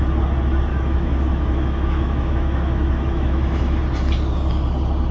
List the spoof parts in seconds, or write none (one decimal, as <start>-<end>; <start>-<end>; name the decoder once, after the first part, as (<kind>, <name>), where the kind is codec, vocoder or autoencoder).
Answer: 0.7-3.8 (autoencoder, DAC-VAE)